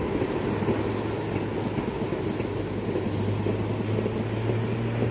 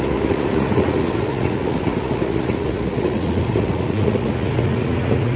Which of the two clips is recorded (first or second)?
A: first